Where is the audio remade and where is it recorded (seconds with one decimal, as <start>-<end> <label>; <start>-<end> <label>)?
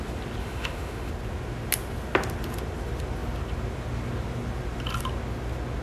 0.0-0.4 recorded; 0.4-1.1 remade; 1.1-5.8 recorded